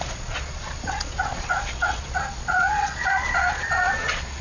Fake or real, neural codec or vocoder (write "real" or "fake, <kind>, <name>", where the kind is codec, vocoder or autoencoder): fake, vocoder, Vocos